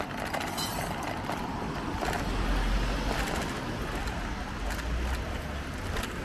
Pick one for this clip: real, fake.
real